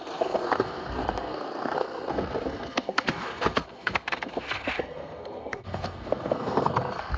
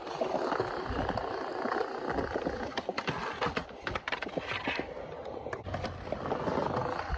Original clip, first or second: second